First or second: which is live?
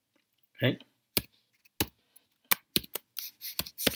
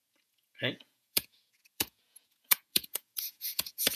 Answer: first